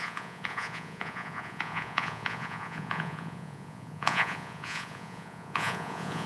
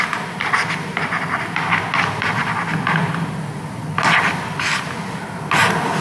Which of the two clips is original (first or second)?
second